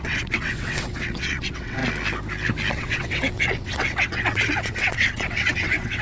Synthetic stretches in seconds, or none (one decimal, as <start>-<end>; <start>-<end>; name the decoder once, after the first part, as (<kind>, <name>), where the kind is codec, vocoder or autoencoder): 0.0-1.8 (vocoder, WaveNeXt); 2.7-6.0